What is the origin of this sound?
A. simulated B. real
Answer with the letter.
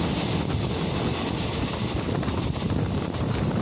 B